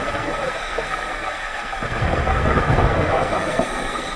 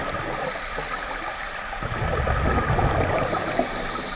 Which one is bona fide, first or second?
second